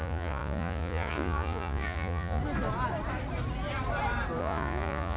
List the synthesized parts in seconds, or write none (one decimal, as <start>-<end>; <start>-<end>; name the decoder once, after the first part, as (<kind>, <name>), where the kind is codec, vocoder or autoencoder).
0.0-2.4 (vocoder, Vocos); 4.4-5.2